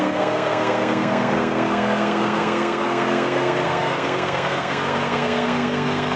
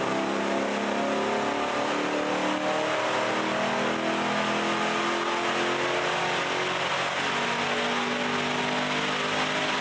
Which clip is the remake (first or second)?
first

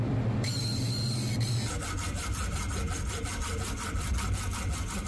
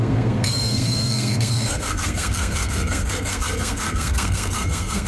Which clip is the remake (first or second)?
second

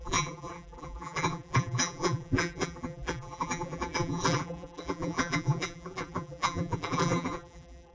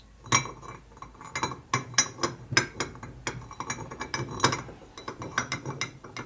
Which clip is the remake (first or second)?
first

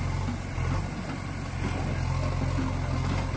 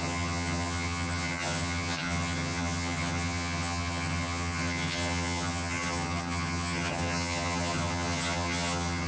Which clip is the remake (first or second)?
second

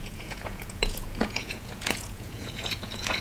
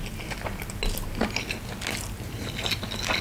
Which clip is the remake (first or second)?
first